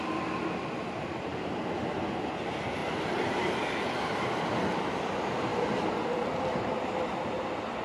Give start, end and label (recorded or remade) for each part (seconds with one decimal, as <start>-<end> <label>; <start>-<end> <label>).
0.0-1.3 remade; 1.3-2.1 recorded; 2.1-2.8 remade; 2.8-3.5 recorded; 3.5-5.5 remade; 5.5-6.5 recorded; 6.5-7.8 remade